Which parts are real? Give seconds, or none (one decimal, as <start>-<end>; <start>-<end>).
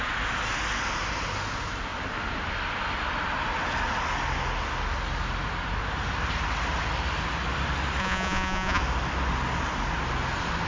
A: 0.0-8.0; 8.8-10.7